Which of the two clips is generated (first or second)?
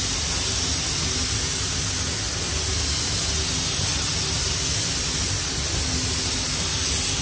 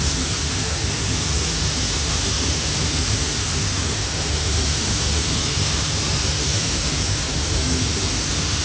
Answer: second